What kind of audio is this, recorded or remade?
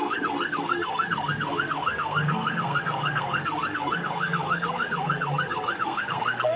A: remade